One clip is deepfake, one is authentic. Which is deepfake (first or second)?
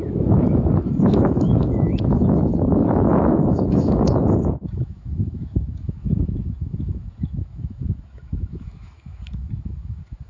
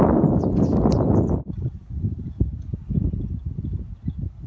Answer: first